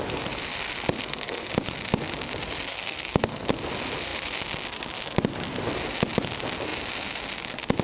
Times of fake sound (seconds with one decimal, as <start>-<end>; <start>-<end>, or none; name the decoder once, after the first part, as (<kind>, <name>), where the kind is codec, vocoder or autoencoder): 1.0-1.5 (codec, SNAC); 2.7-3.5